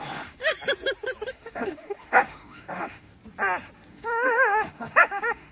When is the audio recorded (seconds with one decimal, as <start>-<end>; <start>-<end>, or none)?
0.4-1.3; 3.1-3.9